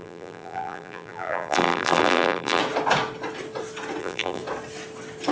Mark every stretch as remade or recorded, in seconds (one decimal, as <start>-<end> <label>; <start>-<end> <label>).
0.0-2.6 remade; 2.6-4.0 recorded; 4.0-4.4 remade; 4.4-5.3 recorded